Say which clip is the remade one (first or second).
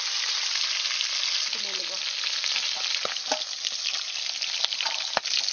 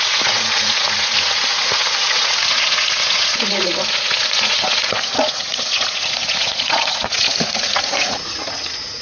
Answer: second